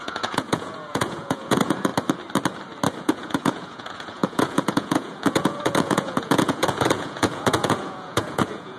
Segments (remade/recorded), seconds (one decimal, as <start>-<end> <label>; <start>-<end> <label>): 0.0-1.9 remade; 1.9-3.0 recorded; 3.0-8.8 remade